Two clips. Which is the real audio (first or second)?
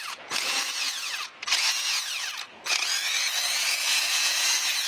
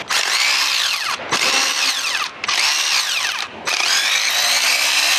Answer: second